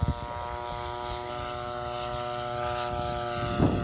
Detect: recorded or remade recorded